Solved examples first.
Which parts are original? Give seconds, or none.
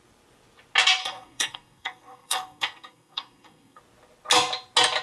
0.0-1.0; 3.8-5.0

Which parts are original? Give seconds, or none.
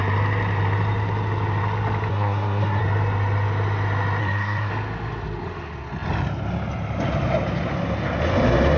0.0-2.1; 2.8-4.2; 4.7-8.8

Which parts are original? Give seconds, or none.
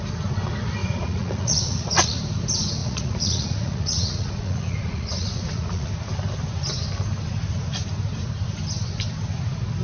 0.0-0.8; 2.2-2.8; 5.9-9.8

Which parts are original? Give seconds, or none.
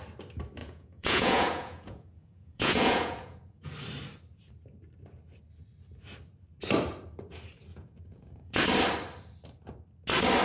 0.0-0.6; 3.7-7.7; 8.6-10.4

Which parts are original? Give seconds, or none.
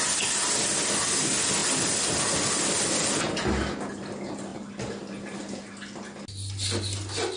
0.0-7.4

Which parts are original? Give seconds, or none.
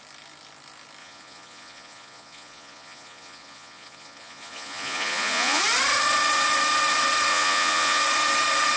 0.0-1.0; 5.6-7.3; 8.0-8.8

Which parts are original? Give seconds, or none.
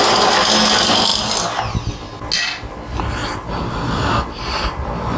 0.0-5.2